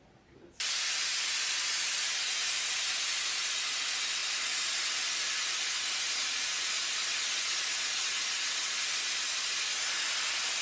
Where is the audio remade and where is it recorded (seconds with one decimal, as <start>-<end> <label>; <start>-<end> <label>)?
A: 0.0-10.6 recorded